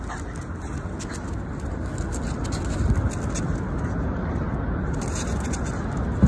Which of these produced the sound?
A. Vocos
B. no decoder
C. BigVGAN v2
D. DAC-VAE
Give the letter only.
B